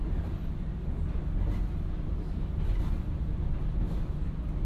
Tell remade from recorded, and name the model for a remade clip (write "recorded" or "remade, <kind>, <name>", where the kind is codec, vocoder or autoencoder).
recorded